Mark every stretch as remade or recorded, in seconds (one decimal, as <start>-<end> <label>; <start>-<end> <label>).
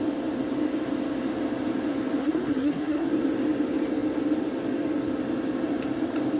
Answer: 0.0-2.2 recorded; 2.2-3.1 remade; 3.1-6.4 recorded